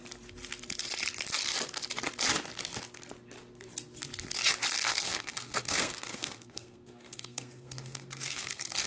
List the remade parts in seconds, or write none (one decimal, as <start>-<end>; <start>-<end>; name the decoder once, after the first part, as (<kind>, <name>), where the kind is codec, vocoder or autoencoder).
4.7-8.9 (codec, SNAC)

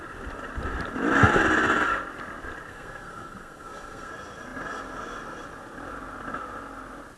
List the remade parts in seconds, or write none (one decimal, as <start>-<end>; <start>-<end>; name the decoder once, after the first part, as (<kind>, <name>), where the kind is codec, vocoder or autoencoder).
2.7-4.1 (codec, SNAC)

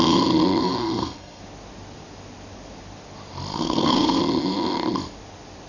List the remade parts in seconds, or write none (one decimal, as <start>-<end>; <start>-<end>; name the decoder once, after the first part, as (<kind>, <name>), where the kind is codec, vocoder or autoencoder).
0.6-1.4 (codec, SNAC); 3.5-4.2

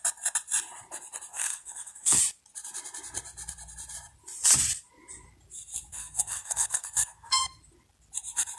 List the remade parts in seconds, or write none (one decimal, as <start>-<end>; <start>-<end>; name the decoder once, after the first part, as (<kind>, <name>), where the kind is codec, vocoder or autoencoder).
1.3-2.2 (codec, SNAC); 5.9-7.6

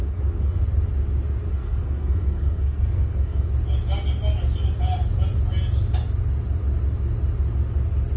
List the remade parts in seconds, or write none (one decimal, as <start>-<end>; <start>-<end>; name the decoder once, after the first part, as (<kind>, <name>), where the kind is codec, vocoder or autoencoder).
0.0-0.6 (codec, SNAC); 1.5-3.5